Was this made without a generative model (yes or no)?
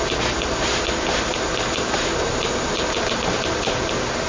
yes